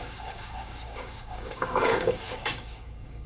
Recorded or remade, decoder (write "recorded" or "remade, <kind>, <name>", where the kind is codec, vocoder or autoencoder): remade, codec, DAC